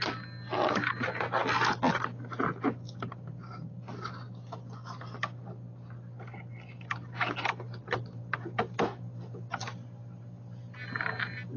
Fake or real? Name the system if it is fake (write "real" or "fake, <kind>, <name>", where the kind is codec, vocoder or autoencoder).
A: real